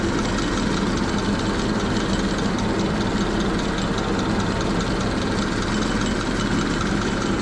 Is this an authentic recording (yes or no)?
yes